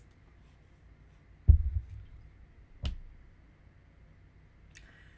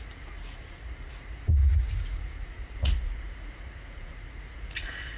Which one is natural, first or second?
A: first